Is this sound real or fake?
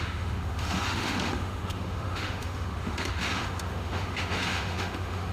fake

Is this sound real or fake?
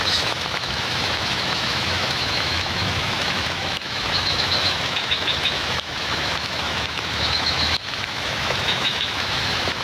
fake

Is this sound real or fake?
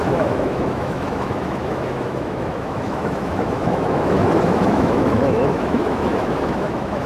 fake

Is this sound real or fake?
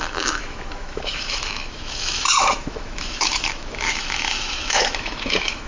fake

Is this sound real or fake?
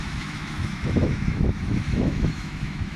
fake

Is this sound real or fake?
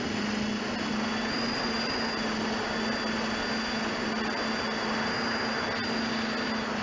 real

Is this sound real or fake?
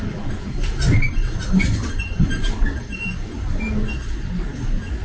real